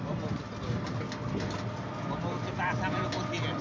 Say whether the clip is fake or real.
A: real